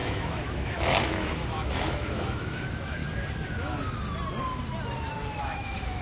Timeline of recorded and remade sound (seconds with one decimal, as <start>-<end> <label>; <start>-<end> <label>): 0.0-3.0 remade; 3.0-5.4 recorded; 5.4-6.0 remade